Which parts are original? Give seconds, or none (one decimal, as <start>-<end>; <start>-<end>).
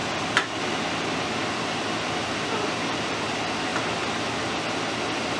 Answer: 0.6-1.4; 3.3-5.4